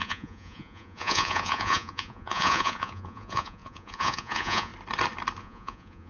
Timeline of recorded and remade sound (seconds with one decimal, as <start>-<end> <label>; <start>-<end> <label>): 0.0-4.7 remade; 4.7-5.4 recorded; 5.4-6.1 remade